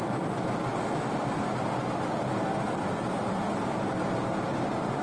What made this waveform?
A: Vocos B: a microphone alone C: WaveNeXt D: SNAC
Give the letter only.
B